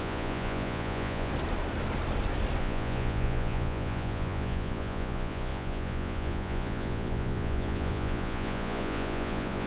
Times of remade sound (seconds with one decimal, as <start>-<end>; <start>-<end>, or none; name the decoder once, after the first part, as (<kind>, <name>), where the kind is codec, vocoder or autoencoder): 0.0-1.3 (vocoder, Vocos); 2.6-9.7